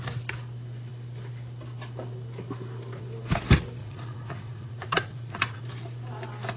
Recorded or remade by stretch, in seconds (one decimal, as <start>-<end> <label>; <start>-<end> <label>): 0.0-3.8 recorded; 3.8-5.6 remade; 5.6-6.6 recorded